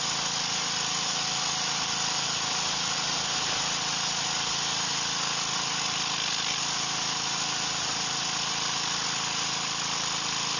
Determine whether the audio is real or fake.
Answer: real